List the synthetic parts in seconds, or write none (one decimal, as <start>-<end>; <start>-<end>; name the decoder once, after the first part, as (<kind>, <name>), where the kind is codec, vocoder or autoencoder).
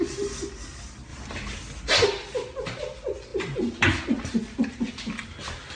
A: none